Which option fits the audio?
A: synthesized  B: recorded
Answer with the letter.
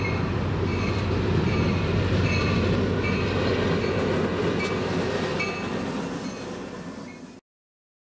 B